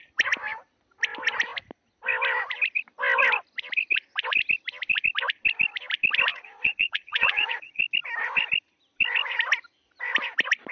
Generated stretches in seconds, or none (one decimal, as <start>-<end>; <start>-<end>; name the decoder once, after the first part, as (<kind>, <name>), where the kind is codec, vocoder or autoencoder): 6.3-7.8 (vocoder, Vocos)